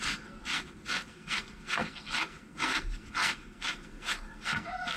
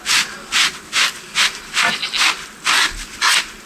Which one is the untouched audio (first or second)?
second